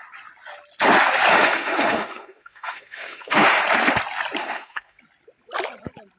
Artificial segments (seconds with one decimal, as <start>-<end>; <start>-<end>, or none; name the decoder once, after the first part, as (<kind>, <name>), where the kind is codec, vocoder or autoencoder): 1.3-3.6 (autoencoder, DAC-VAE); 4.4-5.0